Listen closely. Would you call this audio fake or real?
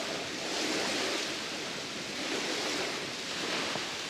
real